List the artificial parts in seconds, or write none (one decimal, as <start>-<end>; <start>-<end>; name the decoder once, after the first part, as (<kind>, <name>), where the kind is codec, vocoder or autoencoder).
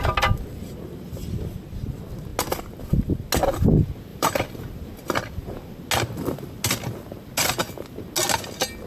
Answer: 4.1-4.8 (vocoder, BigVGAN v2)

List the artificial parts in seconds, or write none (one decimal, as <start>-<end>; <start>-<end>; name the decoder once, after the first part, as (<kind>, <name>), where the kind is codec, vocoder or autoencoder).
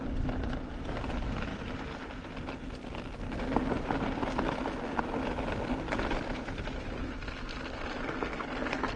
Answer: none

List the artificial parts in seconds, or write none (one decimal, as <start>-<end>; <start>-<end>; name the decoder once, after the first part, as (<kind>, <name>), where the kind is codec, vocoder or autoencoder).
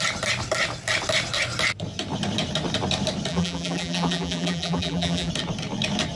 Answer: 3.3-5.3 (vocoder, BigVGAN v2)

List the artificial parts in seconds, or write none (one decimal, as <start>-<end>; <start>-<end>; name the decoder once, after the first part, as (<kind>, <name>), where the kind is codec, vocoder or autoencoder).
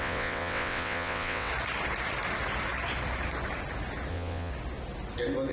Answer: 0.0-1.5 (vocoder, WaveNeXt); 4.1-4.5